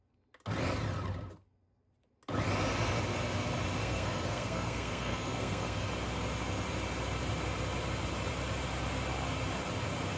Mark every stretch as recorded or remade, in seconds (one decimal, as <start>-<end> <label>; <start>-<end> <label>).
0.0-3.8 recorded; 3.8-5.9 remade; 5.9-10.2 recorded